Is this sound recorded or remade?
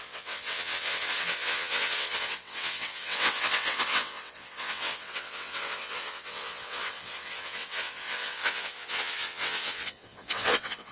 remade